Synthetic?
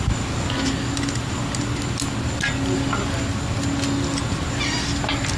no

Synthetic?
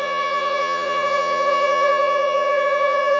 yes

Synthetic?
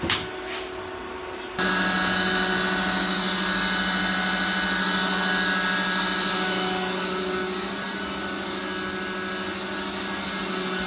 no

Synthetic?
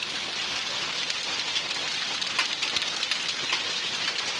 no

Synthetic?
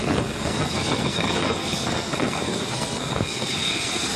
yes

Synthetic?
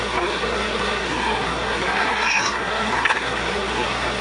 yes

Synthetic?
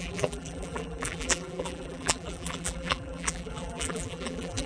yes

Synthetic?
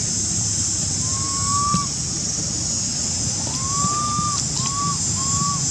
no